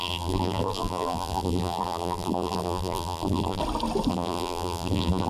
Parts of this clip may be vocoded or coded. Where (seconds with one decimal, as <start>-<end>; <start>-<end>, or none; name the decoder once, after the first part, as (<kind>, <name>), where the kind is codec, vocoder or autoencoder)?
0.0-3.6 (vocoder, BigVGAN v2); 4.1-5.3